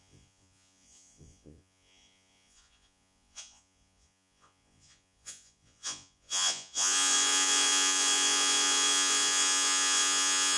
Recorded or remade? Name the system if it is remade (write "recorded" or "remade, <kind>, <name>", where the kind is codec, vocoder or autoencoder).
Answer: remade, vocoder, Vocos